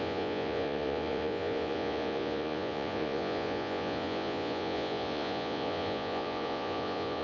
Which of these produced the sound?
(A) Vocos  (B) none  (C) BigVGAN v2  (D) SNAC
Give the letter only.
A